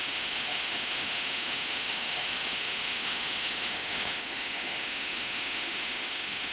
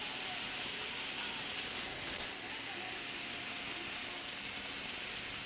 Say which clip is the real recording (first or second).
second